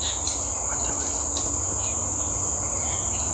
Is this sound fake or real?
real